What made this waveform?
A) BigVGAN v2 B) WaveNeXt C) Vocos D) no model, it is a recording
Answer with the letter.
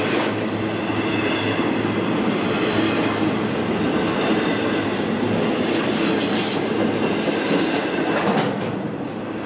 D